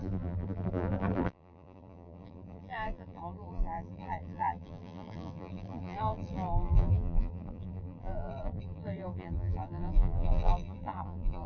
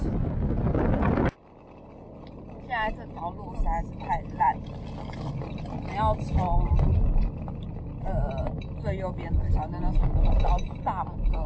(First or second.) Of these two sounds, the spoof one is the first